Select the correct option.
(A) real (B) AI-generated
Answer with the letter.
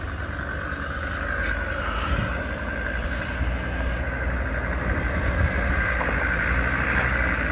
A